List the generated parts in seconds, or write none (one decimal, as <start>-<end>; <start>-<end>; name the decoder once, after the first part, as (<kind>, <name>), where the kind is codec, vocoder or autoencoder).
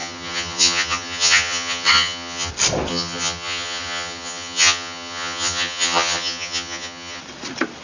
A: 0.0-2.5 (vocoder, HiFi-GAN); 2.9-7.2